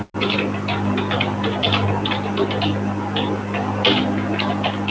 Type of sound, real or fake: real